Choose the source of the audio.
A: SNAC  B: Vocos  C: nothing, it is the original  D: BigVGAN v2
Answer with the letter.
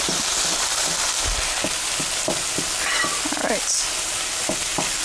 C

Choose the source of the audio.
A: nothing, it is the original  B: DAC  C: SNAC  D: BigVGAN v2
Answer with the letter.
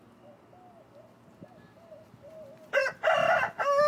A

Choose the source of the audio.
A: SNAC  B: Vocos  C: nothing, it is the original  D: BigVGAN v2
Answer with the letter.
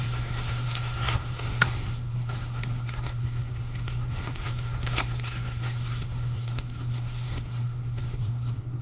A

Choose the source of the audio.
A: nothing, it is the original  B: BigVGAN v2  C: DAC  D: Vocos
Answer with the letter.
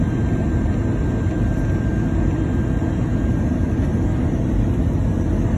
A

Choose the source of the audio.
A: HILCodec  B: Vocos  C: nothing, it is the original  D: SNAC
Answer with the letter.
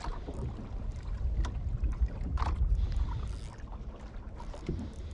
C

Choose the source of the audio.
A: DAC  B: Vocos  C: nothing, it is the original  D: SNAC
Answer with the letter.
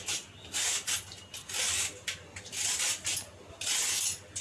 C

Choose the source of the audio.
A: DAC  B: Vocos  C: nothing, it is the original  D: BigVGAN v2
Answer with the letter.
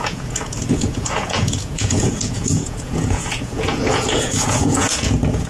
B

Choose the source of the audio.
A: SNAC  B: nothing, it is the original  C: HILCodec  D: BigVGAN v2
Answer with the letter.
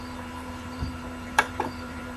D